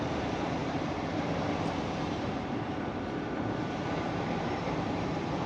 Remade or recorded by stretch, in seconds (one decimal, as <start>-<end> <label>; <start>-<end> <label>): 0.0-5.5 remade